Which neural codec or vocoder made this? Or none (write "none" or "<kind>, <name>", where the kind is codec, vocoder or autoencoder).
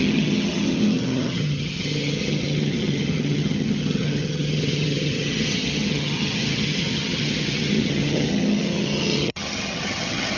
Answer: vocoder, HiFi-GAN